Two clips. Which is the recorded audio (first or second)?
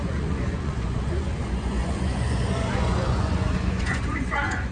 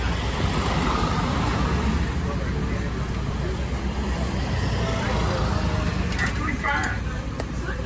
second